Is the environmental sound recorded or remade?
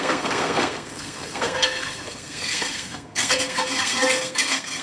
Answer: remade